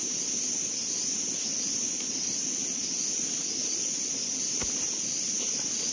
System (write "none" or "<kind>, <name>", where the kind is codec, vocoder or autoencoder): vocoder, BigVGAN v2